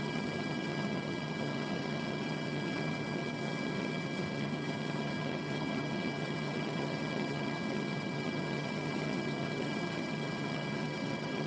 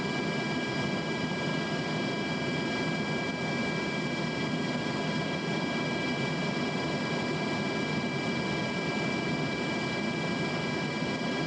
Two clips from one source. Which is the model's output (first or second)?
first